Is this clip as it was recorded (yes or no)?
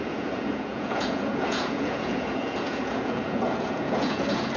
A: no